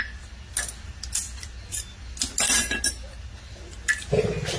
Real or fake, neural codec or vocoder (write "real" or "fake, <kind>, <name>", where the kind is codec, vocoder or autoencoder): real